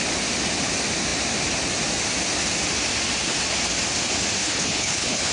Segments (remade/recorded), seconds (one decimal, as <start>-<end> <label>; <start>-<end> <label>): 0.0-4.4 recorded; 4.4-5.3 remade

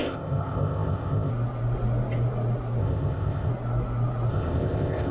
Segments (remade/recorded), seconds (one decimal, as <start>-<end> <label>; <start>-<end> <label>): 0.0-1.3 remade; 1.3-2.8 recorded; 2.8-3.5 remade; 3.5-4.3 recorded; 4.3-5.1 remade

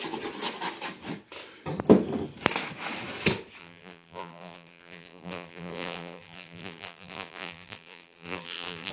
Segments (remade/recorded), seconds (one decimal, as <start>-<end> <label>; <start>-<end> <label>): 0.0-3.6 recorded; 3.6-8.9 remade

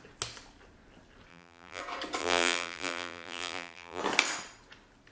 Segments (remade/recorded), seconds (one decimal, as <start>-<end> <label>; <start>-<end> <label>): 0.0-1.3 recorded; 1.3-1.8 remade; 1.8-2.2 recorded; 2.2-4.0 remade; 4.0-5.1 recorded

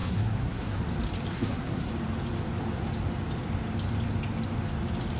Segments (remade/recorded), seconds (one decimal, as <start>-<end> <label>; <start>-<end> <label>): 0.0-0.8 remade; 0.8-1.3 recorded; 1.3-1.9 remade; 1.9-5.2 recorded

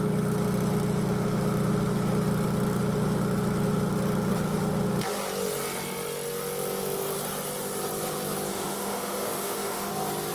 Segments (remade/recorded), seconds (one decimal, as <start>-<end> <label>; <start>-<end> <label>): 0.0-8.5 recorded; 8.5-9.9 remade; 9.9-10.3 recorded

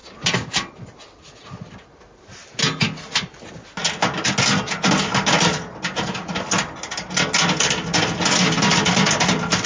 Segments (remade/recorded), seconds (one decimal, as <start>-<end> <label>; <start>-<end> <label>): 0.0-9.7 recorded

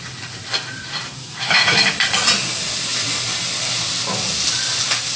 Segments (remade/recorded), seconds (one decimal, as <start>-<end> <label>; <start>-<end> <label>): 0.0-1.2 recorded; 1.2-1.9 remade; 1.9-5.2 recorded